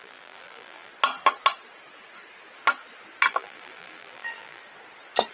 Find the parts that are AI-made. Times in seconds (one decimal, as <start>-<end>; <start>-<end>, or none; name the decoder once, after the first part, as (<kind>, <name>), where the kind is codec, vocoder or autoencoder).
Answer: 0.0-0.9 (vocoder, BigVGAN v2); 3.3-4.6